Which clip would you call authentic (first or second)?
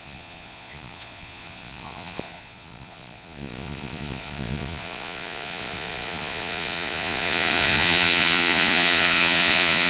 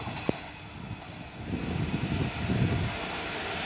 second